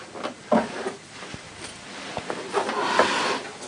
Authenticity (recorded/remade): recorded